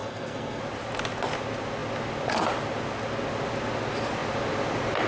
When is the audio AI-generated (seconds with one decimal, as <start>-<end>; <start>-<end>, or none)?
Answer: 0.0-0.6